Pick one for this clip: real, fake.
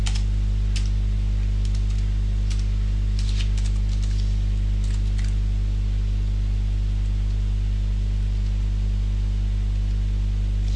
real